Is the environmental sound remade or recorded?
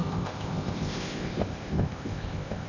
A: remade